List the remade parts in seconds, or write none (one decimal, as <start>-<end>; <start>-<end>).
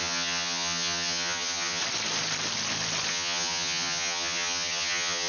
0.0-1.8; 3.1-5.3